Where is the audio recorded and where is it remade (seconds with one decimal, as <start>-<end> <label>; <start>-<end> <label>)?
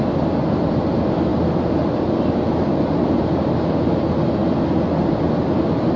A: 0.0-6.0 recorded